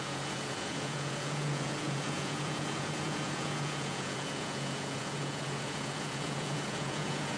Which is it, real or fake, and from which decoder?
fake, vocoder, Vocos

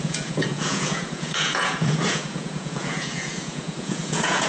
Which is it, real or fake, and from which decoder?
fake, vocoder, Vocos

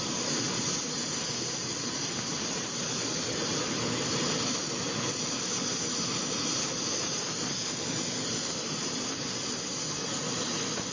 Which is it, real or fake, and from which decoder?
real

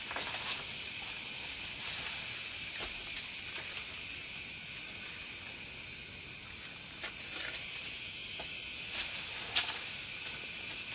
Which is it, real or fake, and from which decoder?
real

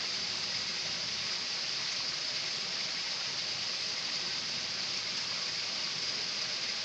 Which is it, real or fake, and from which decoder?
real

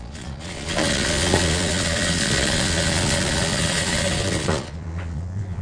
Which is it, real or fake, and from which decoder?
fake, vocoder, Vocos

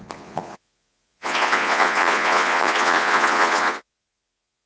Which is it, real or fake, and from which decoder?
fake, vocoder, Vocos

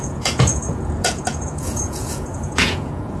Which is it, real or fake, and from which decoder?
fake, vocoder, Vocos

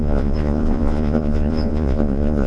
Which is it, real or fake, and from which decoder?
fake, vocoder, Vocos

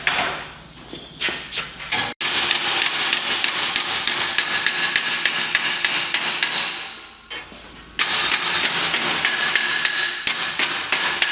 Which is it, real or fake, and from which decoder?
real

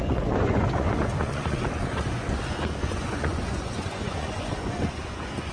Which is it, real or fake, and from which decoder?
fake, vocoder, Vocos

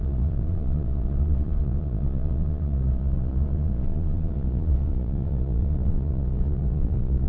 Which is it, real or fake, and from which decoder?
fake, vocoder, Vocos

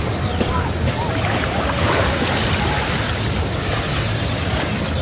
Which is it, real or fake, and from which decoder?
real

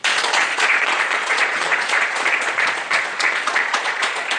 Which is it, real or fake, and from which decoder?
fake, vocoder, Vocos